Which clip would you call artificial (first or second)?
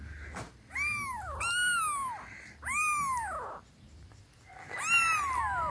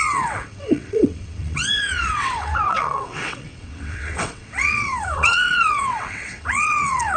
second